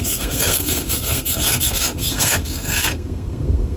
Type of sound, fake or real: fake